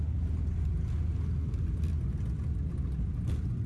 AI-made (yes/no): no